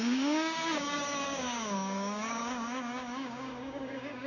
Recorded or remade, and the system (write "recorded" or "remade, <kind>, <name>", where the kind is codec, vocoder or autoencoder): remade, codec, DAC